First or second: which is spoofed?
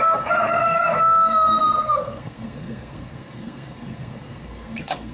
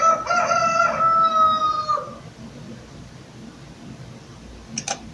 first